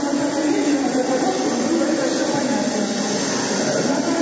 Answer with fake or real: real